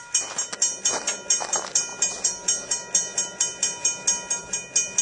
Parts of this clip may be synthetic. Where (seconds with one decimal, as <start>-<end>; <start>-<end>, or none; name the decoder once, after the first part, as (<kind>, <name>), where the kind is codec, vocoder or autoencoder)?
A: none

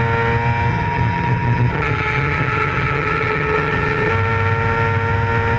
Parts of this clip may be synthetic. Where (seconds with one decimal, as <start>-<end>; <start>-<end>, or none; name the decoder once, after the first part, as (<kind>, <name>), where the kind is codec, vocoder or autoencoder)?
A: 0.7-4.1 (vocoder, HiFi-GAN)

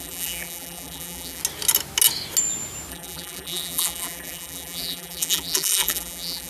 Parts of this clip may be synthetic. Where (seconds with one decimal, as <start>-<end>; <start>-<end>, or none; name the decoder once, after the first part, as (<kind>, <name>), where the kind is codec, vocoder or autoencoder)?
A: 0.0-1.4 (vocoder, BigVGAN v2); 2.9-6.5